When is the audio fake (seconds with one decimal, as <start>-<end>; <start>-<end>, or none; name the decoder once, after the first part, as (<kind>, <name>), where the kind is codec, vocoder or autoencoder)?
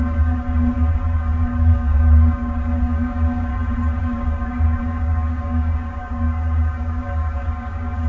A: 0.0-3.5 (codec, DAC); 4.0-8.1